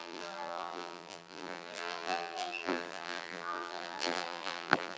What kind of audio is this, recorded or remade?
remade